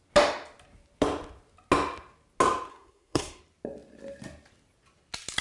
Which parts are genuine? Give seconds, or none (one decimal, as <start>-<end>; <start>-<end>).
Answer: 0.0-2.7; 3.4-5.4